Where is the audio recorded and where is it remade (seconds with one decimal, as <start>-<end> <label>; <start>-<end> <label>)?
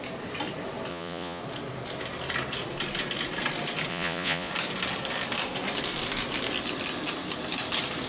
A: 0.0-0.9 recorded; 0.9-1.4 remade; 1.4-3.9 recorded; 3.9-4.5 remade; 4.5-8.1 recorded